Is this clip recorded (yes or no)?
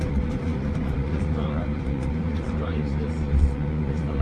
no